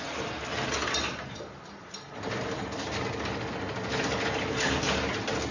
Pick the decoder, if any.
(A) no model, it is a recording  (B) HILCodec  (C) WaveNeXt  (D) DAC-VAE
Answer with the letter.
A